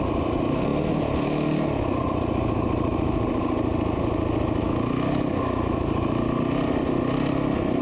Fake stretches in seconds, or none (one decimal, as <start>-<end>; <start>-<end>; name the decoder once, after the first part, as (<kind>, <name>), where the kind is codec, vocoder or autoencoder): none